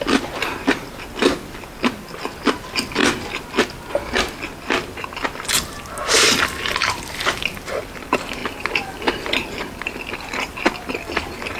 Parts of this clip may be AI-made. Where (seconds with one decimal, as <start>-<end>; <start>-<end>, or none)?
0.0-3.0; 6.1-11.6